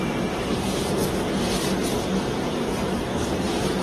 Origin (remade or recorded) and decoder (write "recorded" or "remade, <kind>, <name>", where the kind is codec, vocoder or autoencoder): remade, vocoder, BigVGAN v2